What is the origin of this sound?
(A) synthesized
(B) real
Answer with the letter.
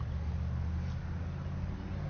B